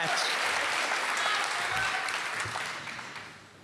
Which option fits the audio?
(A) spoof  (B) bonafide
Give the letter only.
B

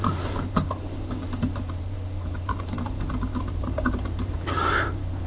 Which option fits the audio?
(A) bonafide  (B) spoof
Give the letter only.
B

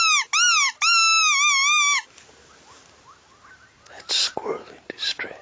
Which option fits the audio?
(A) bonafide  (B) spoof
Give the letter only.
A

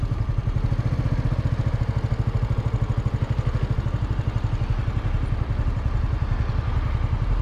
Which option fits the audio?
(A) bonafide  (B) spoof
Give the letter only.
A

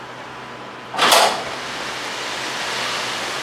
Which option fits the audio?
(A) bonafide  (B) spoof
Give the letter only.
A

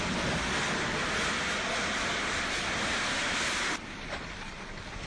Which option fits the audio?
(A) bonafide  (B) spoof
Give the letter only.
A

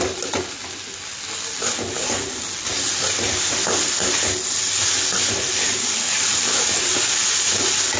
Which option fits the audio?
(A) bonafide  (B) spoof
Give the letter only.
A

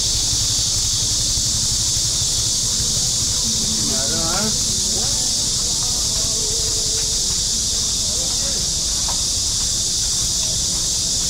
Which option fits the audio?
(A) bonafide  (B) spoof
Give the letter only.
A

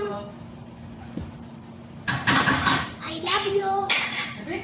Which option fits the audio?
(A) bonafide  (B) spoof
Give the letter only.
B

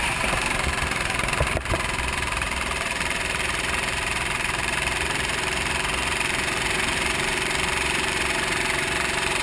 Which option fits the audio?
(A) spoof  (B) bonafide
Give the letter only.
A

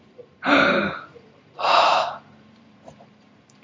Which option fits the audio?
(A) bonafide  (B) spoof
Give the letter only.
B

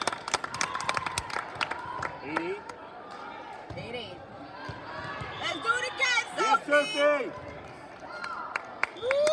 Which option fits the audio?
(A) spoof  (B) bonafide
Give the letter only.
B